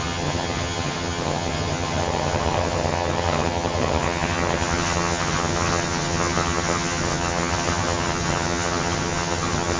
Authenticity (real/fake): fake